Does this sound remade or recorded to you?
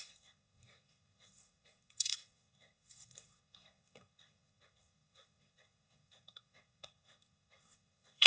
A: remade